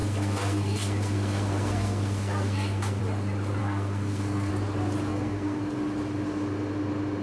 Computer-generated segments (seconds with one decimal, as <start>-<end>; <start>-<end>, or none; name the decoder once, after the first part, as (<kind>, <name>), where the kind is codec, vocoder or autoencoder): 0.0-3.0 (codec, SNAC); 3.6-4.5; 5.1-5.6